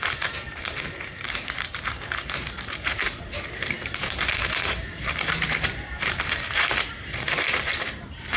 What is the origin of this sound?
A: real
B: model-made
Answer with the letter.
B